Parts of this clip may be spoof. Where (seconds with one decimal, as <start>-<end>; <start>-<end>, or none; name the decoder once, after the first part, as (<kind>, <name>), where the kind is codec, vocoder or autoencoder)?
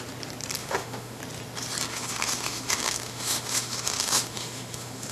0.6-1.2 (autoencoder, DAC-VAE); 1.9-5.1